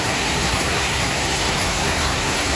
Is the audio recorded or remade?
remade